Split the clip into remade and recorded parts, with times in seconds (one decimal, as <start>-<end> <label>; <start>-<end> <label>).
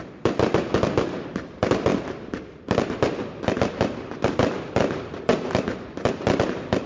0.0-6.9 recorded